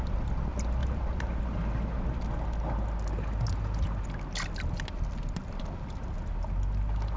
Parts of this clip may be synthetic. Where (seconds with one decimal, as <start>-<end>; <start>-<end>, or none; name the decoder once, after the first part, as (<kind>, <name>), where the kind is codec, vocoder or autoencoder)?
0.8-1.4 (vocoder, BigVGAN v2)